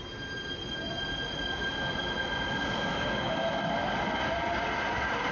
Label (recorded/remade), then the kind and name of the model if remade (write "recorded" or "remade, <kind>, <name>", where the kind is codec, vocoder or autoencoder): recorded